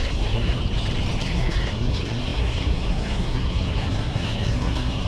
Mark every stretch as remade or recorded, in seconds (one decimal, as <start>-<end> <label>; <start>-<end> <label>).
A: 0.0-0.6 remade; 0.6-1.2 recorded; 1.2-5.1 remade